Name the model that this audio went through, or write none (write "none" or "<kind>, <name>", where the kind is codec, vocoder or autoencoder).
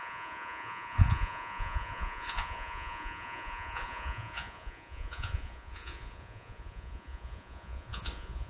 vocoder, Vocos